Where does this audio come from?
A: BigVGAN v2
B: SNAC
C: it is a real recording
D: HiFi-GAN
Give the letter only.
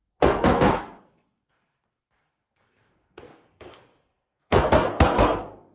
B